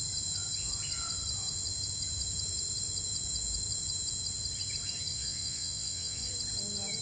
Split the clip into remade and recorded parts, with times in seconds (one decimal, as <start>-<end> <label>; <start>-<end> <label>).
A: 0.0-5.1 recorded; 5.1-6.3 remade; 6.3-7.0 recorded